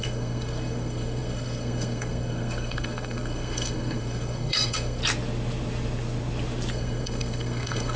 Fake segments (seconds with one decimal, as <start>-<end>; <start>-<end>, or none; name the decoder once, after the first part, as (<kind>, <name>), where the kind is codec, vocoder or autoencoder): 0.0-5.0 (codec, SNAC); 6.7-8.0